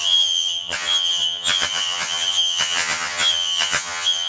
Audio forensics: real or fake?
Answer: fake